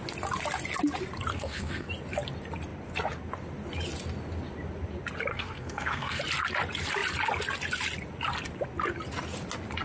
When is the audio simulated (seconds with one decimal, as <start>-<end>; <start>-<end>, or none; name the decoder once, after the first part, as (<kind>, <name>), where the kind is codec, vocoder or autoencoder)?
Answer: 1.3-1.9 (codec, SNAC); 5.3-6.2

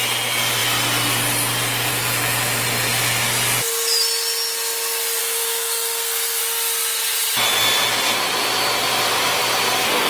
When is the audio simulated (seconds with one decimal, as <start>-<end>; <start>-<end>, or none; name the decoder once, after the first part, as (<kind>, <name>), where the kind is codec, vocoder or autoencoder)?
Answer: 5.2-6.4 (codec, SNAC)